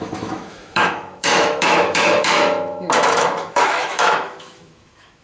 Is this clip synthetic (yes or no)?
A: yes